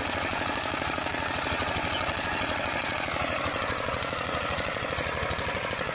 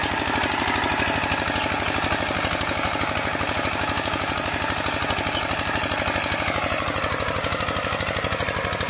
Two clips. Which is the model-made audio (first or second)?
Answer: first